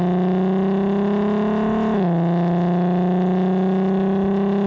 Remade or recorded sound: recorded